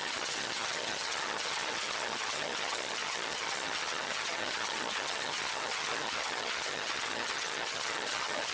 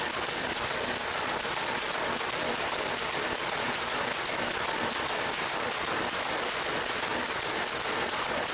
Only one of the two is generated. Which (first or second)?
first